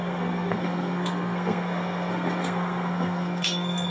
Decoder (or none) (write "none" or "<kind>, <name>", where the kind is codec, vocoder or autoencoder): codec, SNAC